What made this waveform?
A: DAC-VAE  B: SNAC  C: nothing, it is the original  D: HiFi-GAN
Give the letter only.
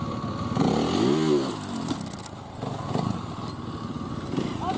C